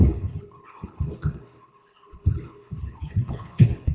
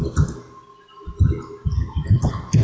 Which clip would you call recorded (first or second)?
second